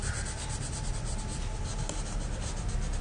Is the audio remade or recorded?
recorded